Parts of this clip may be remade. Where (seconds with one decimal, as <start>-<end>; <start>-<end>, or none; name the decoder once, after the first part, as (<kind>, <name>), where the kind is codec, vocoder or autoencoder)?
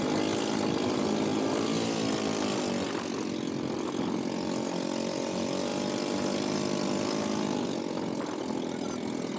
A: none